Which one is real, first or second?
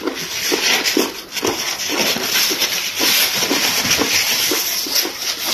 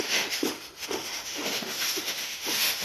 first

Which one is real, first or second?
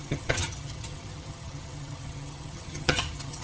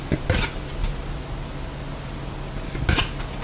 second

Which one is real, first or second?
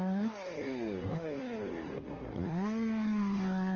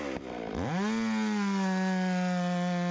second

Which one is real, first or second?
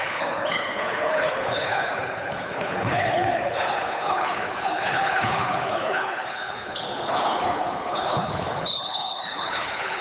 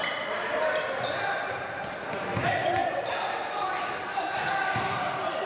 second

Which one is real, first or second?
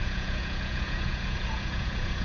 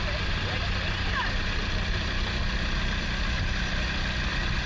second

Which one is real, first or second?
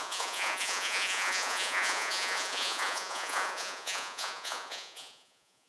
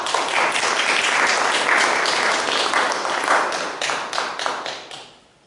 second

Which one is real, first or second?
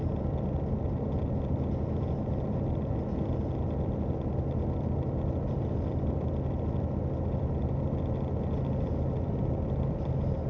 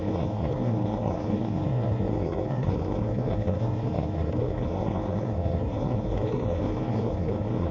first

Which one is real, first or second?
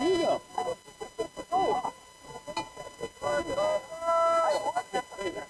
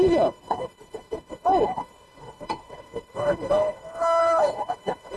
first